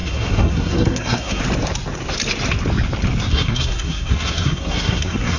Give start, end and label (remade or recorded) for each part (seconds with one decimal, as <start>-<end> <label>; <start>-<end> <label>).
0.0-1.4 remade; 1.4-3.3 recorded; 3.3-5.4 remade